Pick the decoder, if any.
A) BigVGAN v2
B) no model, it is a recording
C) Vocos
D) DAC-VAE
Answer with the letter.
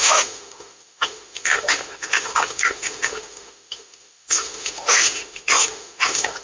D